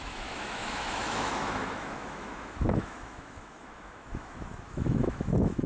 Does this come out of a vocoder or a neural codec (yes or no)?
yes